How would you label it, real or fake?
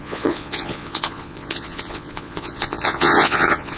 fake